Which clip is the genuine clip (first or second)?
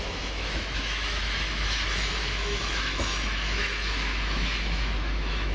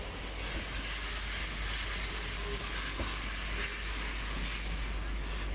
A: second